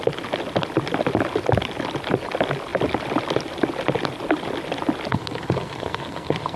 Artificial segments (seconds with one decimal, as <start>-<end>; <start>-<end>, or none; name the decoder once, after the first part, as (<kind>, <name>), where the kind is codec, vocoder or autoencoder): 5.1-6.6 (codec, SNAC)